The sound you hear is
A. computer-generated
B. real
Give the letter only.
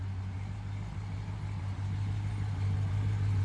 B